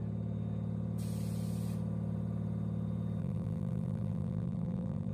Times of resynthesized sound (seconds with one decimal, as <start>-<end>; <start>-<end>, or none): 3.2-5.1